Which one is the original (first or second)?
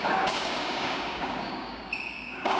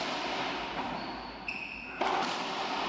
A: second